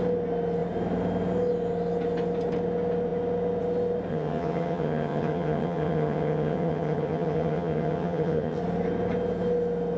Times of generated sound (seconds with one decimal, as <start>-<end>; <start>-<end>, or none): 4.1-8.6